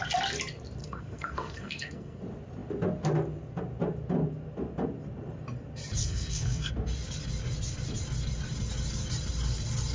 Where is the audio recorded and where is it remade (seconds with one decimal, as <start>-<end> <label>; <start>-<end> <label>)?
0.0-0.8 recorded; 0.8-2.2 remade; 2.2-6.0 recorded; 6.0-6.7 remade; 6.7-9.9 recorded